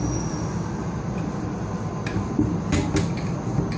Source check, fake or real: real